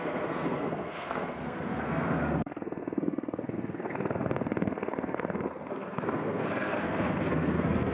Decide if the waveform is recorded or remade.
remade